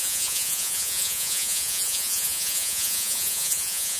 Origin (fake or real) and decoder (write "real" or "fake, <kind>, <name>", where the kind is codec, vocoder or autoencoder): fake, vocoder, Vocos